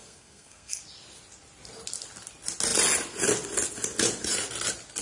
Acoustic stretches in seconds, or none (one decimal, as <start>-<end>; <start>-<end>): 0.8-5.0